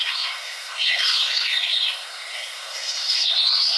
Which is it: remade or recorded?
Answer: remade